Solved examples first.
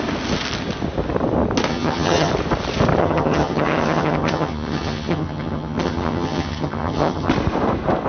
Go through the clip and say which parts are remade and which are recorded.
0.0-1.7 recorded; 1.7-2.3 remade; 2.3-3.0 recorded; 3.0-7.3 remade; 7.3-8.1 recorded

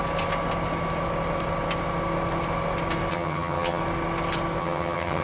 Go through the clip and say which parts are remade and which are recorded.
0.0-3.1 recorded; 3.1-3.8 remade; 3.8-4.6 recorded; 4.6-5.2 remade

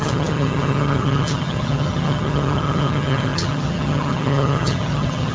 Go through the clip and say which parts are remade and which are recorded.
0.0-5.3 remade

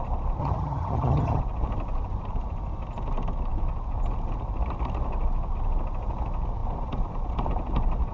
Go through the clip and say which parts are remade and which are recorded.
0.0-0.4 recorded; 0.4-1.4 remade; 1.4-8.1 recorded

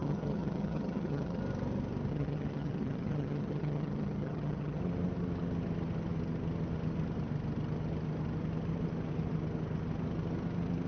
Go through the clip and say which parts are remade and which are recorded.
0.0-1.4 remade; 1.4-2.1 recorded; 2.1-4.8 remade; 4.8-10.9 recorded